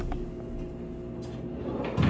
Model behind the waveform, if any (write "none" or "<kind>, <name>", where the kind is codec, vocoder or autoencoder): none